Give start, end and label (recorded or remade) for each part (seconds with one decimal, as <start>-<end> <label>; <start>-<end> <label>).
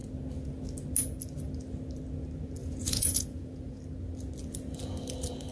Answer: 0.0-2.6 recorded; 2.6-3.8 remade; 3.8-5.5 recorded